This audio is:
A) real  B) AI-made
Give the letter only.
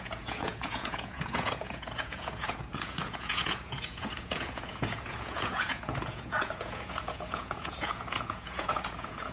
B